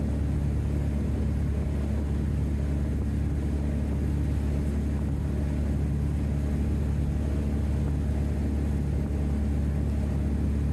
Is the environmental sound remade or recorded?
recorded